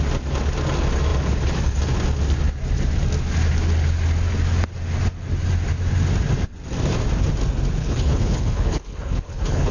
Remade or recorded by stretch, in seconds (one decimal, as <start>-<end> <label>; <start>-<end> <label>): 0.0-7.8 recorded; 7.8-9.7 remade